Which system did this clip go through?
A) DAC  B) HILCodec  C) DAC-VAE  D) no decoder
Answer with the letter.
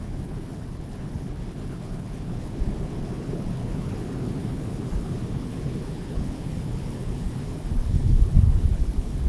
B